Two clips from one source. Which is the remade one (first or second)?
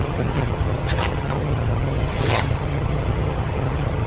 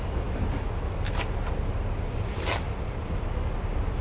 first